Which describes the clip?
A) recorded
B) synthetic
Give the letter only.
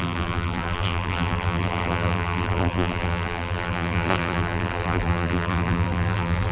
B